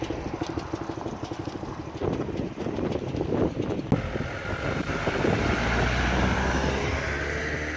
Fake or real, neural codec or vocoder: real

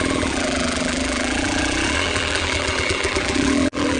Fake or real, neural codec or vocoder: fake, vocoder, BigVGAN v2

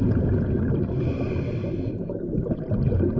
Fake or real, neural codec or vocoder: real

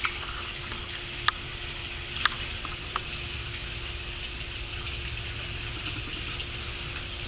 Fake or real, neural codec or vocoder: real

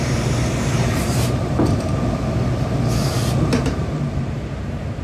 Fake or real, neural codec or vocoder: fake, vocoder, BigVGAN v2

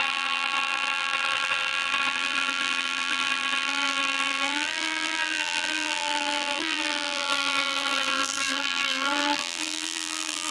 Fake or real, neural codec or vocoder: fake, vocoder, BigVGAN v2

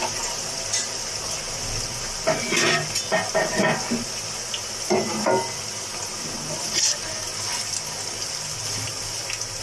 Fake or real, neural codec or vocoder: real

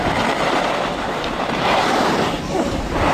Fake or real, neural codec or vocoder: real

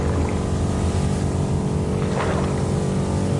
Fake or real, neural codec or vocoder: real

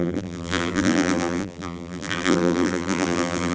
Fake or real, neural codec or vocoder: fake, vocoder, BigVGAN v2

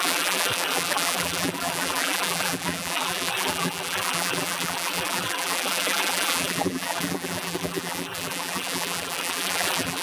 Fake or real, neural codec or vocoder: fake, vocoder, BigVGAN v2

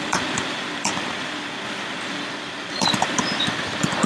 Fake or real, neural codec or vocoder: fake, vocoder, BigVGAN v2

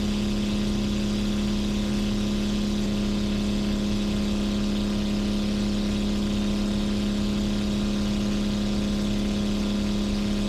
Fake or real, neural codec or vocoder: real